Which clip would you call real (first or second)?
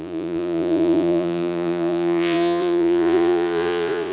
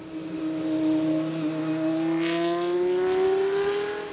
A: second